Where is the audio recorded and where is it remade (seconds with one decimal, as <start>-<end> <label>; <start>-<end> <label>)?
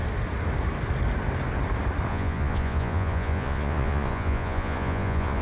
0.0-2.1 recorded; 2.1-5.4 remade